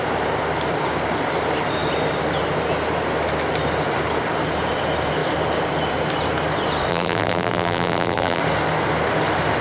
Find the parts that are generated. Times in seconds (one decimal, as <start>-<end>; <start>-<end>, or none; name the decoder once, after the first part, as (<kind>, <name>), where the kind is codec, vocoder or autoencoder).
6.9-8.4 (vocoder, BigVGAN v2)